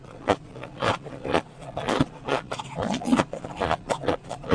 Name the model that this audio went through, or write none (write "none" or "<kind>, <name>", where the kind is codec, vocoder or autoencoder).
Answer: vocoder, Vocos